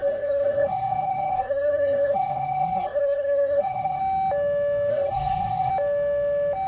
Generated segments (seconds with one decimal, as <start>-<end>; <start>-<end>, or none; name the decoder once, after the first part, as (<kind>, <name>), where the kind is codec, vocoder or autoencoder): 0.0-4.0 (codec, SNAC); 4.9-5.7